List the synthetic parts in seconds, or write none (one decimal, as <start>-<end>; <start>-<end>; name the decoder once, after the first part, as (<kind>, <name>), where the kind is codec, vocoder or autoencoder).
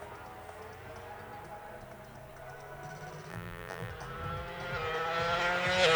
3.3-3.9 (vocoder, BigVGAN v2)